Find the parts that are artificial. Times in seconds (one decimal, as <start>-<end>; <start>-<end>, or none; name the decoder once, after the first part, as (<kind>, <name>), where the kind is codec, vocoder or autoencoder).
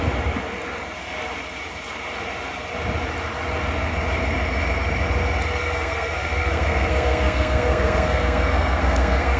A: 5.6-9.4 (codec, SNAC)